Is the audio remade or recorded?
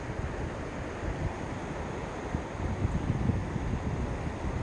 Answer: recorded